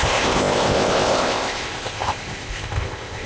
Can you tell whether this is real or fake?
fake